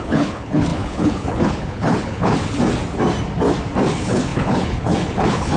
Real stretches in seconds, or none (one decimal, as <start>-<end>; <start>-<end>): 2.6-3.9